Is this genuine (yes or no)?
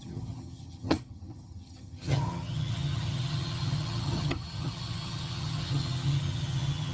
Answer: no